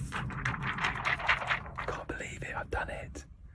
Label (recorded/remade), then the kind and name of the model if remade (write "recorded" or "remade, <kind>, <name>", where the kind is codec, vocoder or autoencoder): recorded